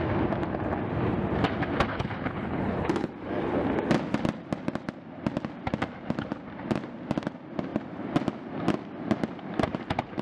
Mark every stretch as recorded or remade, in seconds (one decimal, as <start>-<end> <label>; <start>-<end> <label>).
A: 0.0-1.9 recorded; 1.9-3.1 remade; 3.1-10.2 recorded